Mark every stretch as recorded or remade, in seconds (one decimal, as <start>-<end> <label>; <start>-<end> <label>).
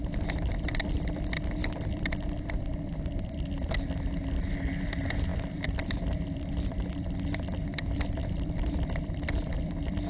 0.0-1.6 recorded; 1.6-3.7 remade; 3.7-5.3 recorded; 5.3-9.5 remade; 9.5-10.1 recorded